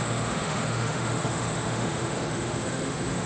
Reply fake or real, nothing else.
fake